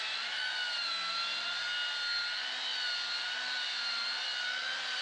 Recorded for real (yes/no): yes